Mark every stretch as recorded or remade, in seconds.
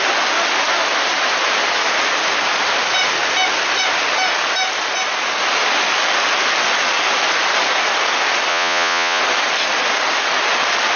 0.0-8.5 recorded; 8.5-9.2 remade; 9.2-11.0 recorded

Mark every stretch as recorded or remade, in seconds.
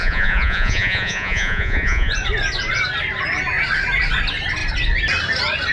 0.0-2.1 remade; 2.1-5.7 recorded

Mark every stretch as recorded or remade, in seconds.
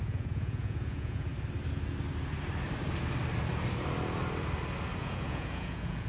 0.0-1.3 remade; 1.3-5.0 recorded; 5.0-6.1 remade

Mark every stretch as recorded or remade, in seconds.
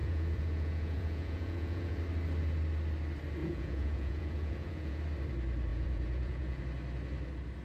0.0-2.0 remade; 2.0-3.4 recorded; 3.4-5.0 remade; 5.0-5.7 recorded; 5.7-6.6 remade; 6.6-7.6 recorded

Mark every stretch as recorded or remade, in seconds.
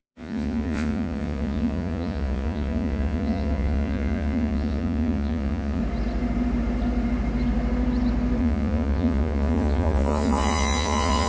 0.0-5.8 remade; 5.8-8.4 recorded; 8.4-11.3 remade